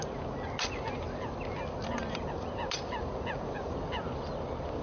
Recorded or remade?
recorded